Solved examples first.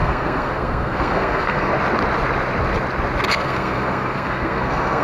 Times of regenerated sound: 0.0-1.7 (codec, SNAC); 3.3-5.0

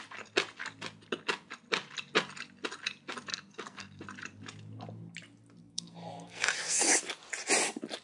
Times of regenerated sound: 3.3-4.0 (codec, SNAC); 5.6-7.0

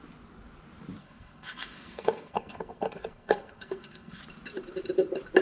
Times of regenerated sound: 1.0-4.2 (codec, SNAC)

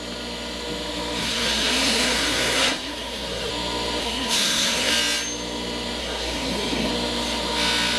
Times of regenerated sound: 1.2-3.5 (codec, SNAC); 4.0-4.9; 6.0-6.9

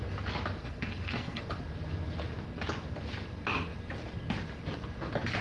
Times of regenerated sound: 0.6-1.4 (codec, SNAC)

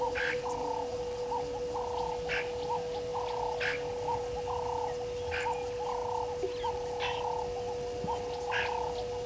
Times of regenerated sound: none

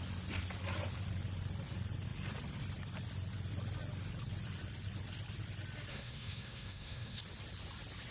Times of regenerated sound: 5.9-7.2 (codec, SNAC)

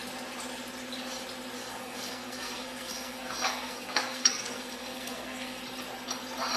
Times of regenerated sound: 1.6-5.6 (codec, SNAC)